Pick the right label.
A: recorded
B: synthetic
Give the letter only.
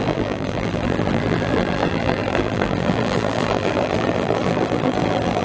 B